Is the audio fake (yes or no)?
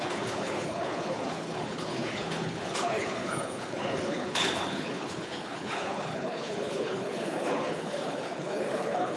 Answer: yes